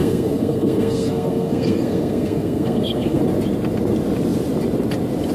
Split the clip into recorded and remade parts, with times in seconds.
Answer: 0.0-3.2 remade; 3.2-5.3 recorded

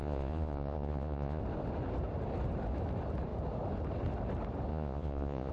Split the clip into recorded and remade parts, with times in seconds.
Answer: 0.0-1.4 remade; 1.4-4.7 recorded; 4.7-5.5 remade

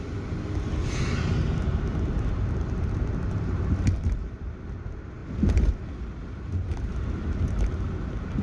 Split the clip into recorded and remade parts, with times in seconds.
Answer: 0.0-8.4 recorded

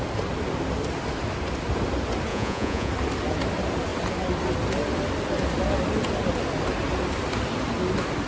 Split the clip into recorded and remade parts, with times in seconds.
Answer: 0.0-2.3 recorded; 2.3-2.9 remade; 2.9-8.3 recorded

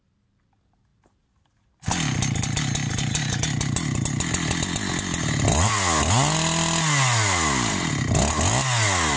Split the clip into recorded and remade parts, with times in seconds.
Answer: 0.0-9.2 recorded

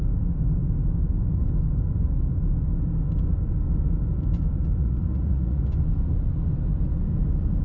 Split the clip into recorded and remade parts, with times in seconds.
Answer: 0.0-4.8 recorded; 4.8-5.7 remade; 5.7-7.6 recorded